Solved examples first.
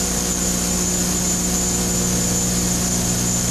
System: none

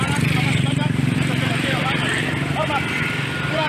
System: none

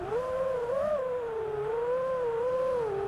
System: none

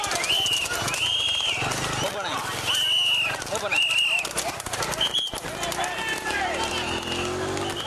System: none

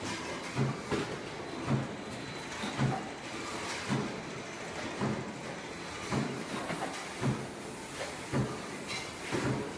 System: none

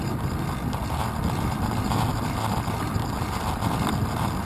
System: none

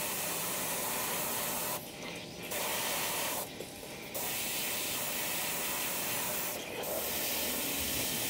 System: none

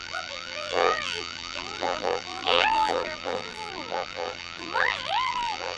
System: vocoder, BigVGAN v2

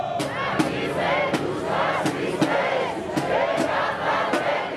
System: none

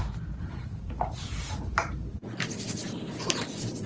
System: vocoder, BigVGAN v2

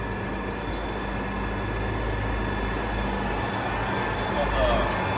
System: none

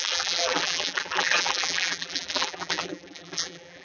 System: vocoder, BigVGAN v2